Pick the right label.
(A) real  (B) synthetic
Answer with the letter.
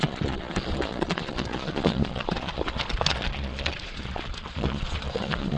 B